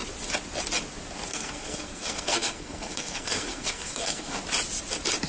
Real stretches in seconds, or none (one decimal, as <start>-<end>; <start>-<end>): 0.0-1.3; 4.4-5.3